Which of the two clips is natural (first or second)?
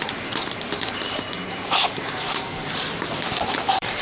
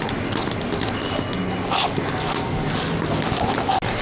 second